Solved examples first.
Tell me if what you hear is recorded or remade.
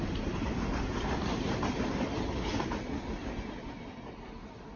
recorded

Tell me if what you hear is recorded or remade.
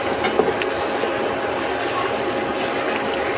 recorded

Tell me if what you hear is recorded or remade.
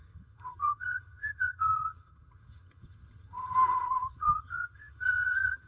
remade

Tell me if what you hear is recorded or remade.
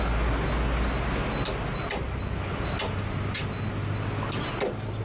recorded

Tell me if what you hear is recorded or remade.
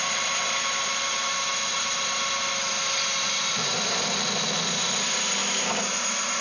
recorded